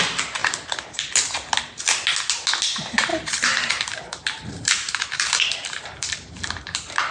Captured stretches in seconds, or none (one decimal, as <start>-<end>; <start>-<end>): 0.0-0.4; 1.0-3.1